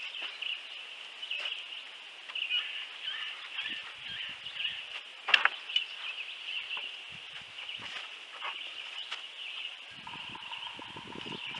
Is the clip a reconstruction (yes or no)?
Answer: no